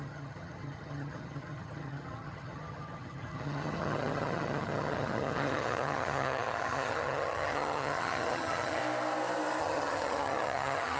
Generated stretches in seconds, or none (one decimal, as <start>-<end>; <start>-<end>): 0.0-8.8; 9.6-11.0